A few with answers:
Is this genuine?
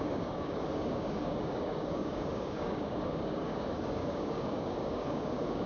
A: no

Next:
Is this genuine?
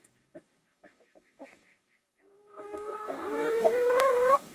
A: no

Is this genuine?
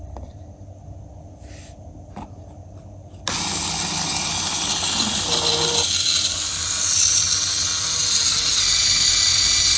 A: yes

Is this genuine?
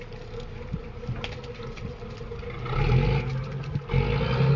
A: yes